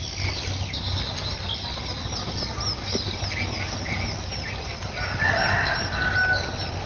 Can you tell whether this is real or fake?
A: real